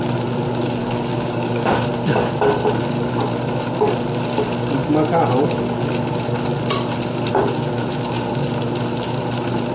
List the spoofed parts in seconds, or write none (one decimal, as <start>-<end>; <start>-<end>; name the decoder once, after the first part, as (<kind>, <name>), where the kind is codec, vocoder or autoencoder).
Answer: 0.8-1.9 (codec, DAC)